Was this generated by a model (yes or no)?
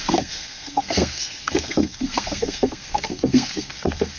yes